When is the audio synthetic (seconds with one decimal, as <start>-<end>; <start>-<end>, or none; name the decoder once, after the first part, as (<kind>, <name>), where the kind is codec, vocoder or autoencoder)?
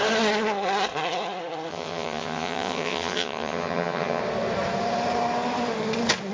1.7-4.2 (vocoder, HiFi-GAN)